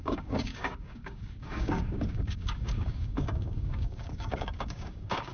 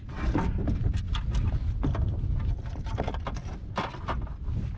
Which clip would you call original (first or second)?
second